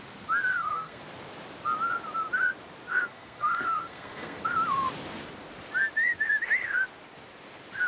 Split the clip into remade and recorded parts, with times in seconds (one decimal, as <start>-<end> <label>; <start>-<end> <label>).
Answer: 0.0-0.5 recorded; 0.5-1.0 remade; 1.0-2.9 recorded; 2.9-4.4 remade; 4.4-7.9 recorded

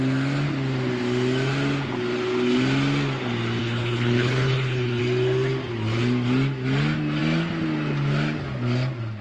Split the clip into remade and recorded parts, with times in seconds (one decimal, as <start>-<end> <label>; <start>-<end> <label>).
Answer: 0.0-3.6 recorded; 3.6-5.0 remade; 5.0-9.2 recorded

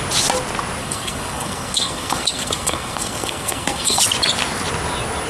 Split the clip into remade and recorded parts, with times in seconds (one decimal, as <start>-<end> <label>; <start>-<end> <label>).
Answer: 0.0-0.8 recorded; 0.8-4.0 remade; 4.0-5.3 recorded